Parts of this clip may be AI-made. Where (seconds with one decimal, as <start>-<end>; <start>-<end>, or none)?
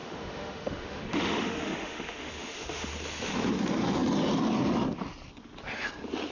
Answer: 0.0-2.9